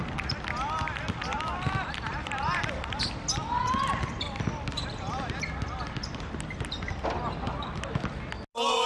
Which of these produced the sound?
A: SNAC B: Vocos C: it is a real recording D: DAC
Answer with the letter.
C